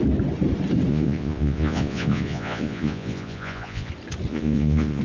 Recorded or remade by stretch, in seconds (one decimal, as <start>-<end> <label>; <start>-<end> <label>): 0.0-0.9 recorded; 0.9-3.9 remade; 3.9-4.3 recorded; 4.3-5.0 remade